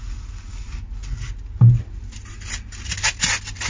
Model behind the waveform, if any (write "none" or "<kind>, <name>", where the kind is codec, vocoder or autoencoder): none